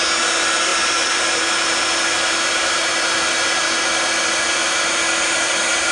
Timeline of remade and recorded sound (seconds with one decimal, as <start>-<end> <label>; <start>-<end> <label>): 0.0-5.9 recorded